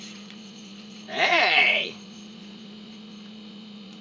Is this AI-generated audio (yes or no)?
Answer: yes